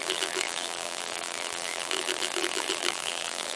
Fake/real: fake